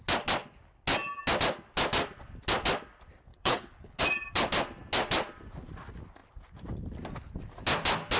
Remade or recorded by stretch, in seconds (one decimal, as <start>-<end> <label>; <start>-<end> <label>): 0.0-3.3 recorded; 3.3-4.0 remade; 4.0-8.2 recorded